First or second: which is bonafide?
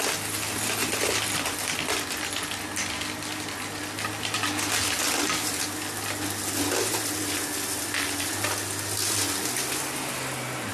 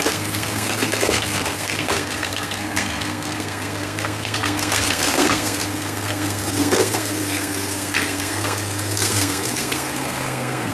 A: first